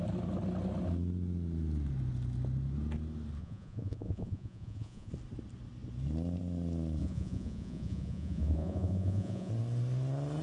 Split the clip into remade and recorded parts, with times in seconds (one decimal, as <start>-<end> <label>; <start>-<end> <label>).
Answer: 0.0-3.4 recorded; 3.4-5.1 remade; 5.1-7.0 recorded; 7.0-9.5 remade; 9.5-10.4 recorded